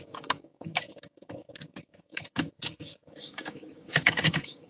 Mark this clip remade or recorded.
remade